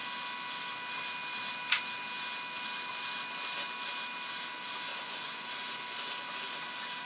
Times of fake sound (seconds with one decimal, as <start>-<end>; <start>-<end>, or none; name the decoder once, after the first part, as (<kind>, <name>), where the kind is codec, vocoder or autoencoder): 4.9-5.5 (vocoder, Vocos)

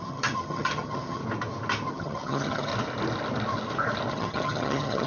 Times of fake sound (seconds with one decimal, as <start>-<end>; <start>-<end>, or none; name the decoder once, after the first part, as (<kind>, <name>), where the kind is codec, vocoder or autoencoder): 0.0-1.2 (vocoder, HiFi-GAN); 1.9-2.7; 4.1-5.1

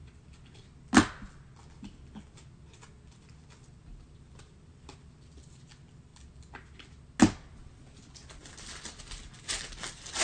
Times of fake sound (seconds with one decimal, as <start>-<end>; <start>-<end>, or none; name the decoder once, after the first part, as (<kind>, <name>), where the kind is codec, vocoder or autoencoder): none

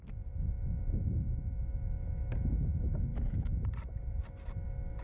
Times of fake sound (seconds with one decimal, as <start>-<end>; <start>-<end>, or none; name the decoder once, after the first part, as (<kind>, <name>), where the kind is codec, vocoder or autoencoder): 3.1-3.7 (vocoder, Vocos)

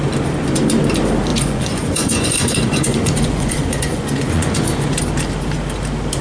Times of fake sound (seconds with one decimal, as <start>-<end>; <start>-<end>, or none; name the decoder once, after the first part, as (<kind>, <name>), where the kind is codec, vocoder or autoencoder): 1.3-5.0 (vocoder, Vocos)

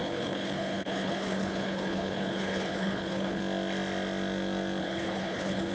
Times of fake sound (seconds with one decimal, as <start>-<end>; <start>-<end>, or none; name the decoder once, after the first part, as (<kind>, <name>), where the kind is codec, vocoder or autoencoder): 0.0-3.4 (codec, HILCodec); 4.8-5.7

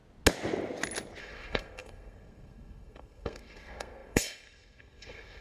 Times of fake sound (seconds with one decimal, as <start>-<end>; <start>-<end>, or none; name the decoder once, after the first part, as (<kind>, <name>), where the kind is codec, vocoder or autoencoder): 1.2-5.4 (codec, SNAC)

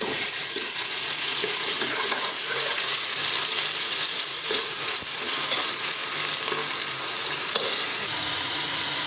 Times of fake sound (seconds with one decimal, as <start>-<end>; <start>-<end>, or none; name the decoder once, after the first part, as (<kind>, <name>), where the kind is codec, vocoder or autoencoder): 0.0-3.2 (vocoder, Vocos); 3.8-6.0; 6.9-9.1